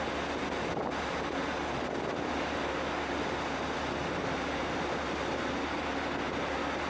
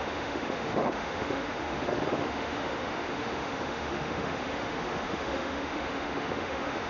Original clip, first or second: first